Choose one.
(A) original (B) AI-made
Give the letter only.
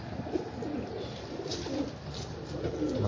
A